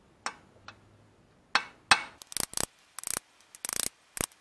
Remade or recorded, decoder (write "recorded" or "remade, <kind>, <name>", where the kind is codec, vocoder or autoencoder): recorded